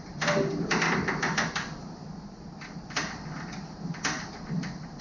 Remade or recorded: recorded